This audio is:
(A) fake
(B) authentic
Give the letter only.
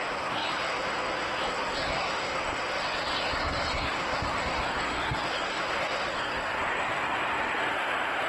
A